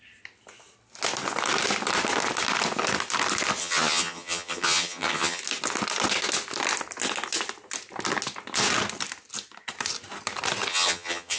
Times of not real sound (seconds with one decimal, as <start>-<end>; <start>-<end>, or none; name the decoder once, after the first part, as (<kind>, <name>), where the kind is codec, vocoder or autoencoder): 3.6-5.4 (vocoder, HiFi-GAN); 10.7-11.4